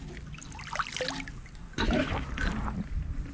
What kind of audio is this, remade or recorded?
recorded